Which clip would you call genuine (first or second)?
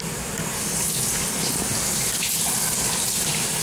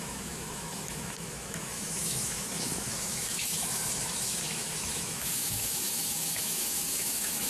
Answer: first